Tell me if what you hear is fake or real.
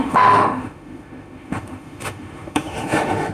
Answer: fake